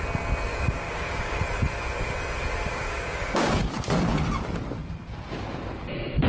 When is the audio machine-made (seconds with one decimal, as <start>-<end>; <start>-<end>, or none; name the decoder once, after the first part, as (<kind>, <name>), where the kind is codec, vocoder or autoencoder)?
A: 0.5-1.4 (codec, DAC); 2.7-3.6